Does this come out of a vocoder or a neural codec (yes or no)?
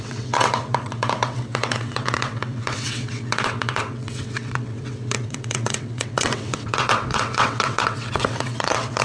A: yes